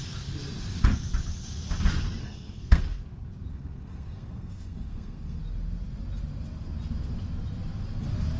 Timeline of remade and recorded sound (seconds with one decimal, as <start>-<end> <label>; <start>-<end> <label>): 0.0-2.2 recorded; 2.2-3.0 remade; 3.0-3.5 recorded; 3.5-5.4 remade; 5.4-8.4 recorded